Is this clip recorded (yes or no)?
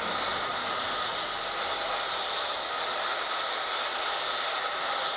yes